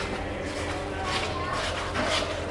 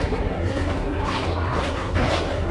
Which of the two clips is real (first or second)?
first